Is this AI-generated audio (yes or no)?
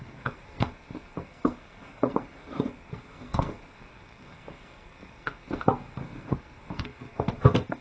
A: yes